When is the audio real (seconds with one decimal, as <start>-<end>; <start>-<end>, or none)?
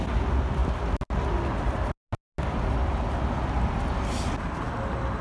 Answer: 0.0-5.2